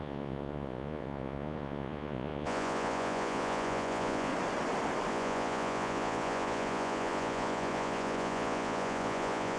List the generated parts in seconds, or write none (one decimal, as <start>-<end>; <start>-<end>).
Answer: 0.0-4.3; 5.1-9.6